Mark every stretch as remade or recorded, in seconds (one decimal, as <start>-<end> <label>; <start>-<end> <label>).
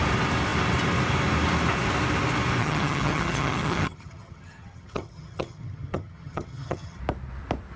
0.0-2.6 recorded; 2.6-7.0 remade; 7.0-7.8 recorded